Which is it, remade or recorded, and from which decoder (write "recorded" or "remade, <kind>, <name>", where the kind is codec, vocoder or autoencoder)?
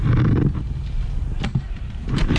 recorded